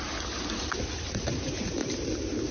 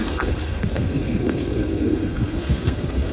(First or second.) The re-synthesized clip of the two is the second